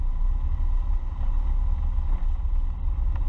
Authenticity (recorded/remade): recorded